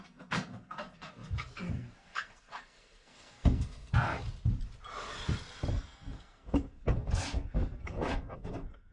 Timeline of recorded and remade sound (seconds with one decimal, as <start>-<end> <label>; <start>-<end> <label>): 0.0-4.1 remade; 4.1-5.7 recorded; 5.7-8.9 remade

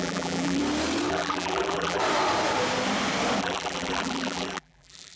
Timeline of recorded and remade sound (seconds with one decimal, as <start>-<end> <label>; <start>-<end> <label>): 0.0-0.6 remade; 0.6-1.1 recorded; 1.1-2.0 remade; 2.0-3.4 recorded; 3.4-5.2 remade

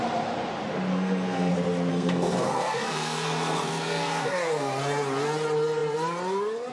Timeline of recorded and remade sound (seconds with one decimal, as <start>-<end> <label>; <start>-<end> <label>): 0.0-0.9 recorded; 0.9-1.5 remade; 1.5-1.9 recorded; 1.9-4.8 remade; 4.8-6.7 recorded

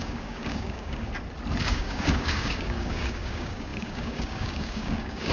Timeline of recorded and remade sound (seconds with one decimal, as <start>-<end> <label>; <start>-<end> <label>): 0.0-1.1 remade; 1.1-1.6 recorded; 1.6-5.3 remade

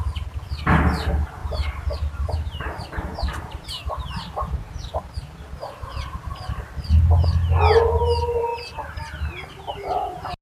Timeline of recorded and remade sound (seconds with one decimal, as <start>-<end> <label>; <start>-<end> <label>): 0.0-1.4 recorded; 1.4-5.9 remade; 5.9-10.4 recorded

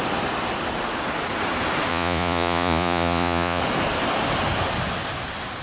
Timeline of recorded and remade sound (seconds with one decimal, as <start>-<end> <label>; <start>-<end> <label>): 0.0-1.9 recorded; 1.9-3.6 remade; 3.6-5.6 recorded

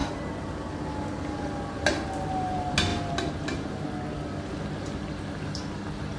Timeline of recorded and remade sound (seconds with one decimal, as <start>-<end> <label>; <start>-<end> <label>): 0.0-6.2 recorded

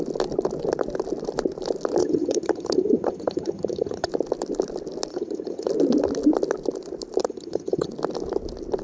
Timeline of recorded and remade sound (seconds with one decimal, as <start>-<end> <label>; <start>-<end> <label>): 0.0-2.0 recorded; 2.0-4.1 remade; 4.1-5.1 recorded; 5.1-5.7 remade; 5.7-7.2 recorded; 7.2-7.9 remade; 7.9-8.8 recorded